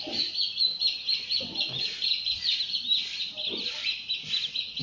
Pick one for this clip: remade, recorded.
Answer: recorded